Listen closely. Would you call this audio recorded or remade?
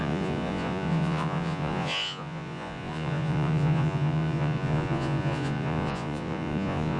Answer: remade